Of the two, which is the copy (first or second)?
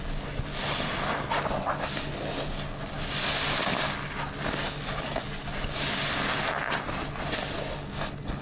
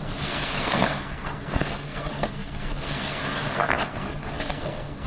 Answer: second